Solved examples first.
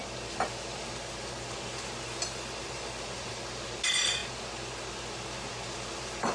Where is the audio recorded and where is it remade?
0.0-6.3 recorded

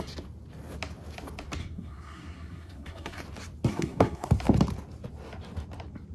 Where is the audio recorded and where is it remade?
0.0-1.6 recorded; 1.6-3.2 remade; 3.2-3.7 recorded; 3.7-4.3 remade; 4.3-6.1 recorded

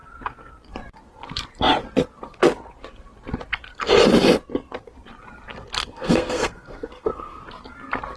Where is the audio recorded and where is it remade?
0.0-5.8 recorded; 5.8-7.4 remade; 7.4-8.2 recorded

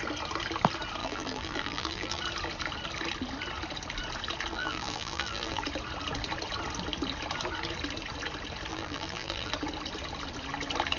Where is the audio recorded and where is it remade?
0.0-1.0 recorded; 1.0-2.2 remade; 2.2-4.5 recorded; 4.5-5.6 remade; 5.6-8.7 recorded; 8.7-9.5 remade; 9.5-11.0 recorded

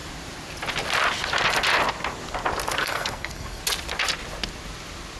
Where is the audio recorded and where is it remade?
0.0-2.8 recorded; 2.8-3.6 remade; 3.6-5.2 recorded

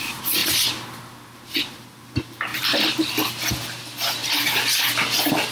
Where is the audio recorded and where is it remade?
0.0-5.5 recorded

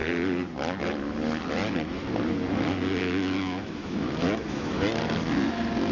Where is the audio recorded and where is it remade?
0.0-3.0 recorded; 3.0-4.8 remade; 4.8-5.9 recorded

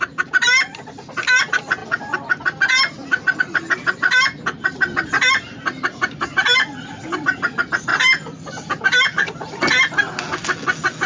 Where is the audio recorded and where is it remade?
0.0-11.1 recorded